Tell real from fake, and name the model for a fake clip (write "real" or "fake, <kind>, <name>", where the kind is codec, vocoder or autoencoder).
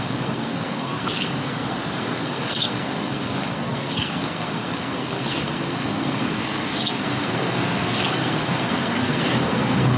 fake, codec, SNAC